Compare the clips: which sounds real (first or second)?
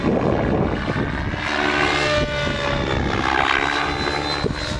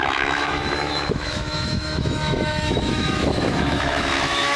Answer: first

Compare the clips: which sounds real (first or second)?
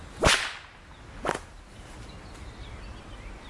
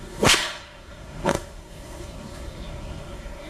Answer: first